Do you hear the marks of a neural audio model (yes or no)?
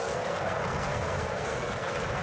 yes